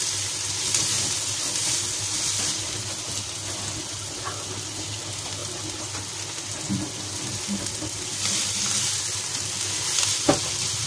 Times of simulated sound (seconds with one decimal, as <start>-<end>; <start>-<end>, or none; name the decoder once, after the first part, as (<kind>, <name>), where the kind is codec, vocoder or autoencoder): none